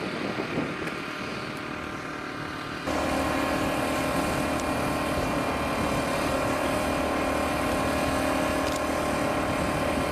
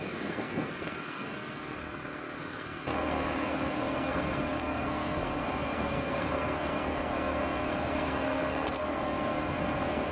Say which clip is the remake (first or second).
second